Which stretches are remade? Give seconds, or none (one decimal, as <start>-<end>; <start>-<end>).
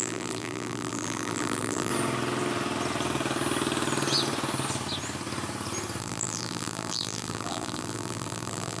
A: 0.0-1.9; 6.0-8.8